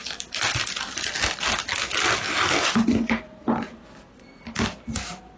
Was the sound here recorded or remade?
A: recorded